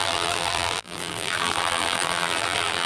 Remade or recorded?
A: remade